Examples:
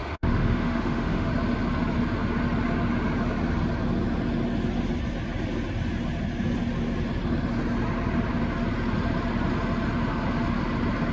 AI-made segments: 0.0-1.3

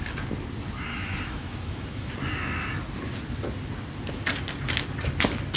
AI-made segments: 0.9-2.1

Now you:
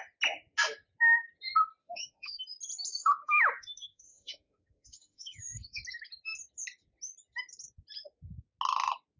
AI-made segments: 1.8-2.4; 2.9-5.8